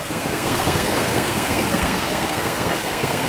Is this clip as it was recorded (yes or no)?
no